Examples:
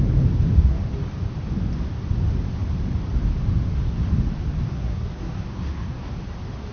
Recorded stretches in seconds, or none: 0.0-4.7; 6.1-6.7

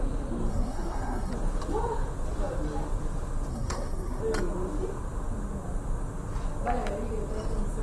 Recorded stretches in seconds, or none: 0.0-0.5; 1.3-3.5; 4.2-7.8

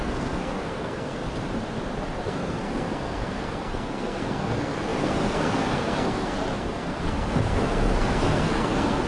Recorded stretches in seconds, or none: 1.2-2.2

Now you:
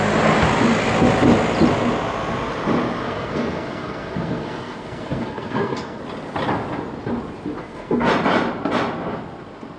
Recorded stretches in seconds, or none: 0.0-3.0; 6.0-7.6; 8.1-9.8

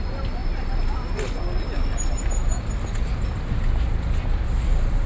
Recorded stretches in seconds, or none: 0.0-5.1

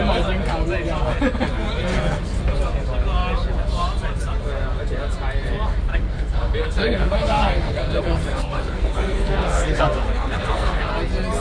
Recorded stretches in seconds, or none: 0.0-1.9; 2.4-5.9; 10.9-11.4